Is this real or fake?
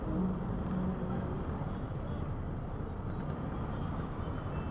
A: real